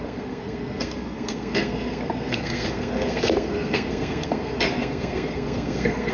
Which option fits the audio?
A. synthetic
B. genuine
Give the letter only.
A